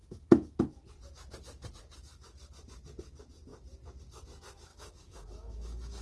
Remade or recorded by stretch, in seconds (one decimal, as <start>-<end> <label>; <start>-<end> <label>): 0.0-0.6 remade; 0.6-4.7 recorded; 4.7-6.0 remade